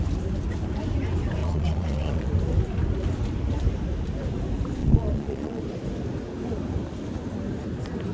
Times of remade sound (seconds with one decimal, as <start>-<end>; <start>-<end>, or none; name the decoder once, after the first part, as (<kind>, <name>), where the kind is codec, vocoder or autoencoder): 1.4-2.3 (vocoder, Vocos); 4.8-5.6

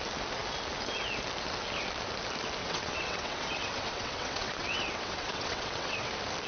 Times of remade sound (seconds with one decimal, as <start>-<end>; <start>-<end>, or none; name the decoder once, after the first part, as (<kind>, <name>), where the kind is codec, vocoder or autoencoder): 2.6-6.1 (vocoder, WaveNeXt)

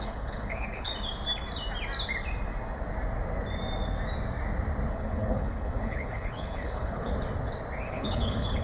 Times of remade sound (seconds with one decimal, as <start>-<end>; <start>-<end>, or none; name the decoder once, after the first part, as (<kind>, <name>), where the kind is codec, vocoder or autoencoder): 0.0-0.9 (codec, HILCodec); 4.9-7.1; 7.9-8.6

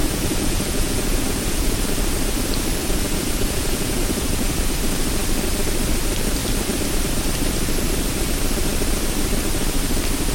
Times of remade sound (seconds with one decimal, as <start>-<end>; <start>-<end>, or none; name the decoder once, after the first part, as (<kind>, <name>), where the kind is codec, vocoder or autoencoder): 0.0-1.8 (vocoder, Vocos); 2.8-4.8

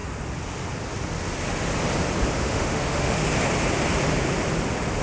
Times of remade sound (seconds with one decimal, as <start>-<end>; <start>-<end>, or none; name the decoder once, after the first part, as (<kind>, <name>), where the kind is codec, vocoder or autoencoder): 2.4-3.2 (autoencoder, DAC-VAE)

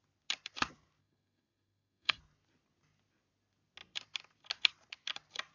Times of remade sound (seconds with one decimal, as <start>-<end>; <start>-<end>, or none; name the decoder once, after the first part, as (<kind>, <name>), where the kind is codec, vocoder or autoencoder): 1.0-2.2 (codec, SNAC)